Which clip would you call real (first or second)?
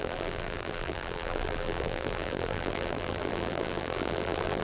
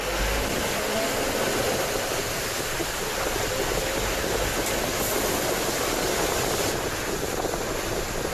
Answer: second